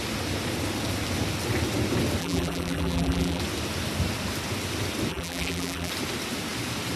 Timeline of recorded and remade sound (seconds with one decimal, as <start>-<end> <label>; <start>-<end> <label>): 0.0-2.2 recorded; 2.2-3.4 remade; 3.4-5.1 recorded; 5.1-5.9 remade; 5.9-7.0 recorded